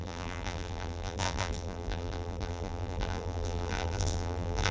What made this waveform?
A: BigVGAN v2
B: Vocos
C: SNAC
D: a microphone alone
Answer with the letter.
A